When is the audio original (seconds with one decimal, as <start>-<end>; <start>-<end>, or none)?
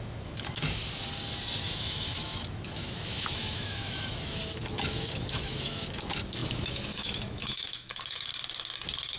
0.8-1.6; 8.3-9.2